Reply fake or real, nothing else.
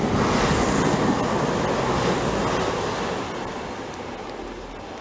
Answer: real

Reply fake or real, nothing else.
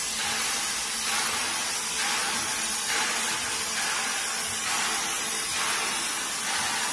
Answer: real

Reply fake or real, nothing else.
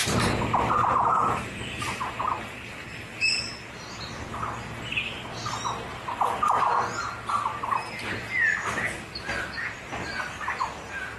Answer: real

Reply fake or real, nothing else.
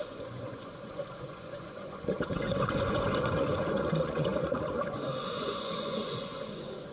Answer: fake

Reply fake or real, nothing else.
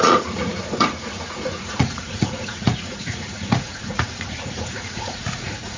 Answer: fake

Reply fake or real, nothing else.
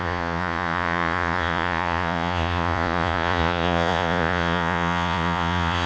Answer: fake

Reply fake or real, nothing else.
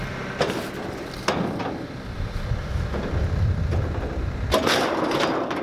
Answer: real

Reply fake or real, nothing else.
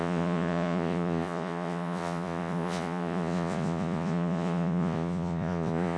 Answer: fake